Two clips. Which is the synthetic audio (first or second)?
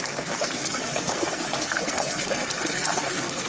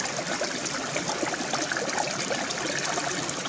first